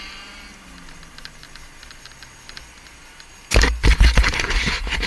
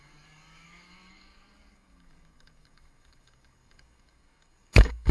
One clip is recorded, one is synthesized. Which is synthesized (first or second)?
second